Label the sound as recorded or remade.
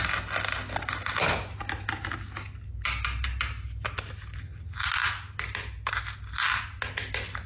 recorded